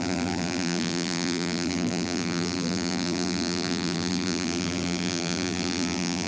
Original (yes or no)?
no